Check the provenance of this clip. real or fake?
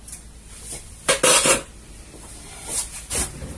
real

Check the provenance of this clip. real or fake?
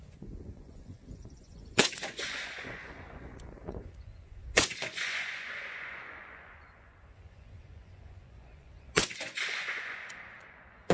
fake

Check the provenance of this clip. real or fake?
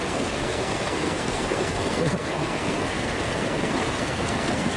fake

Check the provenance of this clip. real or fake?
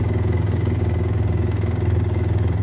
fake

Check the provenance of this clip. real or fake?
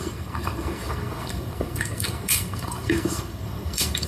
fake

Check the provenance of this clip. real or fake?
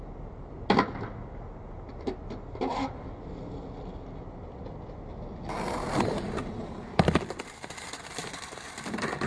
real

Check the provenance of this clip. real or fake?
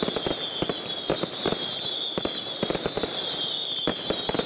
real